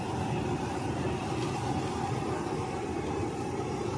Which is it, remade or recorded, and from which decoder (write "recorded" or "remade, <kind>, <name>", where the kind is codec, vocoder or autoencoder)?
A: recorded